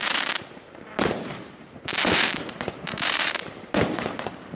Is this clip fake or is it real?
fake